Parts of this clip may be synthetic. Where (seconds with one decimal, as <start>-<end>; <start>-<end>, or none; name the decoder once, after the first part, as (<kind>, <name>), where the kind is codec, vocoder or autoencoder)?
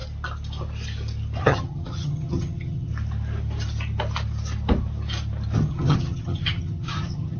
1.4-2.9 (vocoder, HiFi-GAN); 5.7-7.4